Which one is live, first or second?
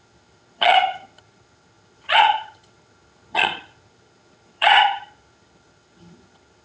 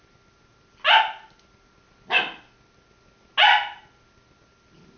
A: second